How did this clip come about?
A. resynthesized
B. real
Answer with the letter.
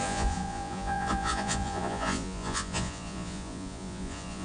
A